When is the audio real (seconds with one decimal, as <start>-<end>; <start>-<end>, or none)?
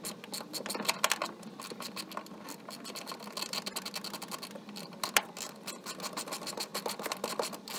0.0-7.8